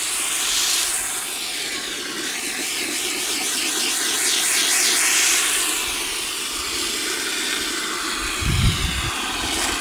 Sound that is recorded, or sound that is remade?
recorded